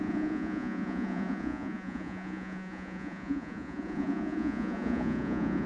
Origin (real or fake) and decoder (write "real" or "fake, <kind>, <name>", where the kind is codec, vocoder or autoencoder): fake, vocoder, Vocos